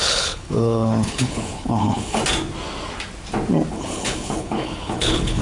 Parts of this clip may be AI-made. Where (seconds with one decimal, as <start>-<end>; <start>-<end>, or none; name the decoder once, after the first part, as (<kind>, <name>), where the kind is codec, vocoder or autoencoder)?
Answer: 0.0-2.2 (codec, HILCodec); 3.7-5.4